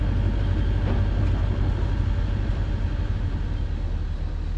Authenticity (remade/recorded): recorded